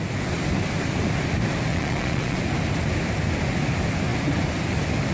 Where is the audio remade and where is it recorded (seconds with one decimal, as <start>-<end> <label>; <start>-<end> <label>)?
0.0-1.7 recorded; 1.7-2.4 remade; 2.4-5.1 recorded